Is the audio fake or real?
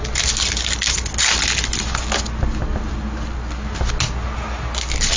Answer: real